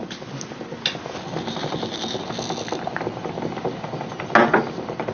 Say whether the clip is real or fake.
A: real